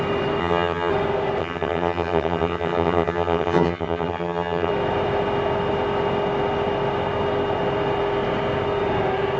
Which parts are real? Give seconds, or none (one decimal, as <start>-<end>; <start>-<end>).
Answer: 0.0-0.4; 0.9-1.4; 4.7-9.4